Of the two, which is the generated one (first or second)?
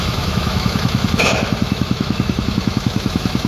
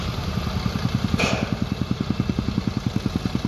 first